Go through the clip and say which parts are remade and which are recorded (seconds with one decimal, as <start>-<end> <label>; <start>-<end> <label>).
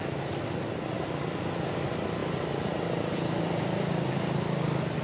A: 0.0-5.0 recorded